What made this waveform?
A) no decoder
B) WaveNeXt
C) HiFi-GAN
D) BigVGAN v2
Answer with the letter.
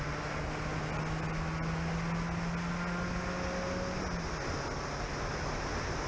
A